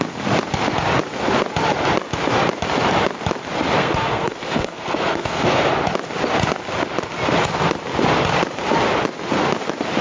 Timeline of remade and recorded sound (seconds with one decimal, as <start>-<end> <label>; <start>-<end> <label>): 0.0-3.8 recorded; 3.8-5.7 remade; 5.7-10.0 recorded